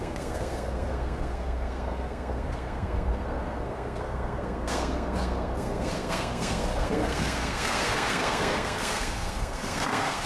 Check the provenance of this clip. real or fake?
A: fake